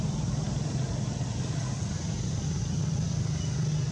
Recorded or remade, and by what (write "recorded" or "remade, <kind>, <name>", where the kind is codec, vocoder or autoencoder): recorded